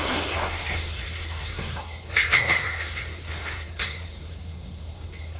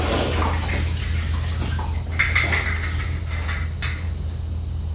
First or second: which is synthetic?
first